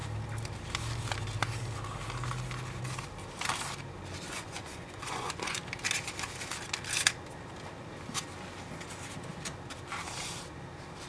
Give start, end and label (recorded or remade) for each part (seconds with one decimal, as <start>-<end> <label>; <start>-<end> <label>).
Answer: 0.0-4.3 recorded; 4.3-5.6 remade; 5.6-11.1 recorded